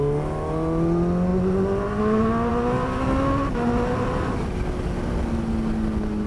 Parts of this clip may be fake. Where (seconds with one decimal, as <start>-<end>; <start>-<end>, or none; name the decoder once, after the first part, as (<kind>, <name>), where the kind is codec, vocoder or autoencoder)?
none